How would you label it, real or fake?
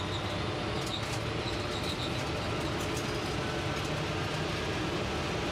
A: real